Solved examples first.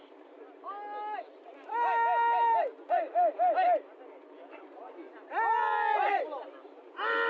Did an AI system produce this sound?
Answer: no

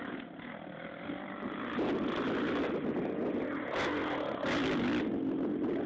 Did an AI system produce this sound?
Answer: no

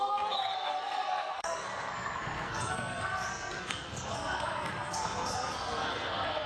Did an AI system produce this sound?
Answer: yes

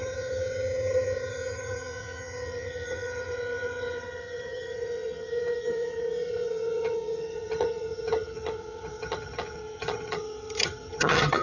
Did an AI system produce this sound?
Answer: yes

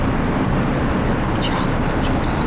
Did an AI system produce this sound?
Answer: yes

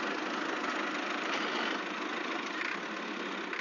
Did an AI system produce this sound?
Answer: no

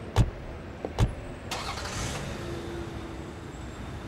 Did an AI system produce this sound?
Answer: no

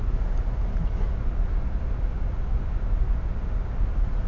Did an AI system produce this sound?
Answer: no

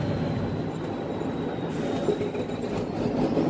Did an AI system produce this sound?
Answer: no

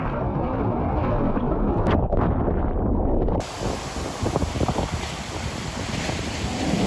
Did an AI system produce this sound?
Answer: no